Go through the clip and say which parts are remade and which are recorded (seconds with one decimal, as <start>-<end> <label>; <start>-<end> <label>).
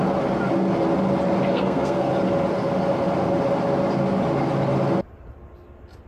0.0-1.5 recorded; 1.5-2.1 remade; 2.1-6.1 recorded